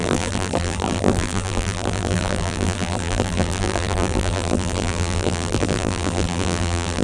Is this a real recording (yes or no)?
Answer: no